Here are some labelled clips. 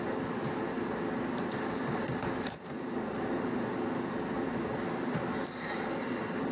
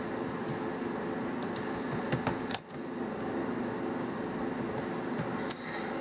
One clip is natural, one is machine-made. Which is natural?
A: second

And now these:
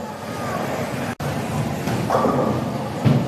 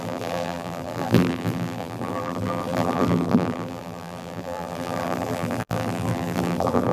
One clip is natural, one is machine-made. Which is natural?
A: first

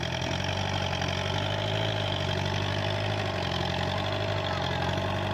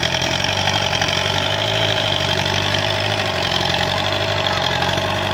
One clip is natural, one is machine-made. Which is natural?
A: first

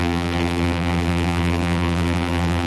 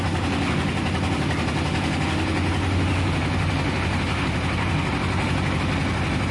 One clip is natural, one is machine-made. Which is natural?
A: second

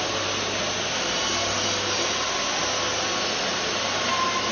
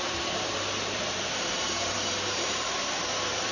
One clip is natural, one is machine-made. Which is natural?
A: first